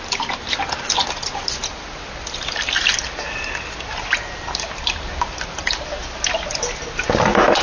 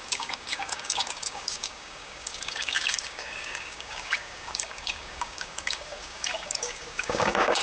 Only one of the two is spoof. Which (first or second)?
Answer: second